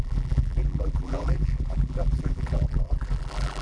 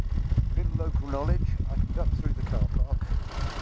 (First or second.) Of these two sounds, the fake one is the first